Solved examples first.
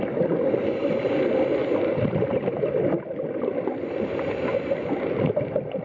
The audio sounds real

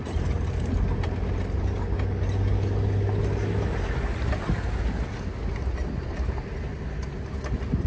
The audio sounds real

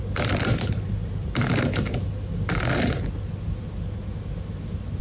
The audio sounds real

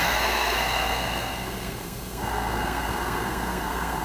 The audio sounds fake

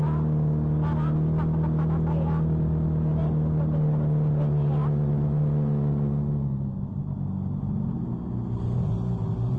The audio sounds real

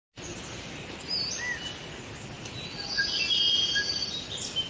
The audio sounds real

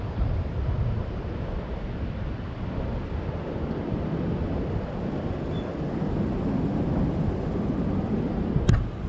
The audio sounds real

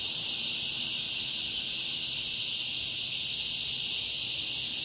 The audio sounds real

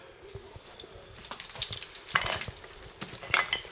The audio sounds real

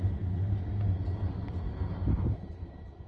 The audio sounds real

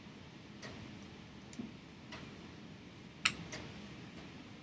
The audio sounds real